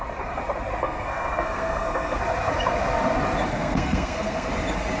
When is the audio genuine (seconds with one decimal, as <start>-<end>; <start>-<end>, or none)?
0.0-0.8; 2.2-3.5; 4.5-5.0